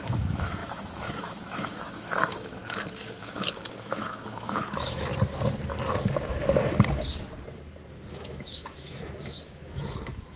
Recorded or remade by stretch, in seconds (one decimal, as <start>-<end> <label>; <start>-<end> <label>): 0.0-2.6 remade; 2.6-3.2 recorded; 3.2-5.1 remade; 5.1-8.1 recorded; 8.1-10.4 remade